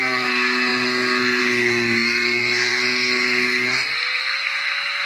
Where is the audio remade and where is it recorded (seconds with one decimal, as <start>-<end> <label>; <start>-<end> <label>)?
0.0-5.1 remade